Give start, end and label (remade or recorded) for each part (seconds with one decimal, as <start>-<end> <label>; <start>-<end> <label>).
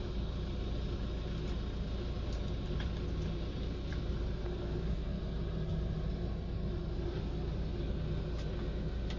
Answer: 0.0-4.6 recorded; 4.6-5.2 remade; 5.2-9.2 recorded